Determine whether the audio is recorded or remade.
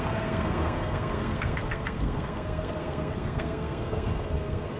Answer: remade